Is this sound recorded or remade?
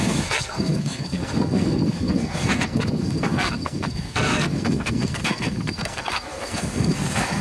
remade